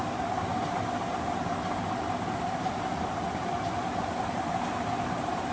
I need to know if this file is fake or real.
fake